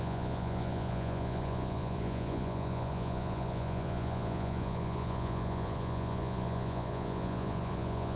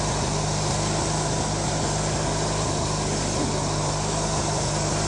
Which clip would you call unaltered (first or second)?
second